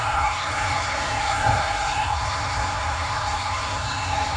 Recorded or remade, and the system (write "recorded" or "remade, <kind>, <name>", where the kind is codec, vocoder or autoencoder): remade, codec, SNAC